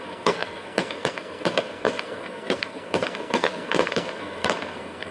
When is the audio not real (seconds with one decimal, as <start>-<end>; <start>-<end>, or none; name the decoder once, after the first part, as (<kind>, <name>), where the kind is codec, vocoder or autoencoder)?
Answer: 0.0-5.1 (codec, SNAC)